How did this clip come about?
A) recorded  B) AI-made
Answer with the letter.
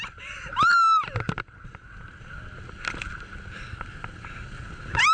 A